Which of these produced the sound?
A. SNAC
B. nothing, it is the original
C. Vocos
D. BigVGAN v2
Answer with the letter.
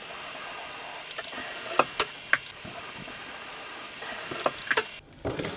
B